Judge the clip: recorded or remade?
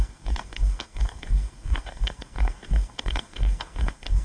remade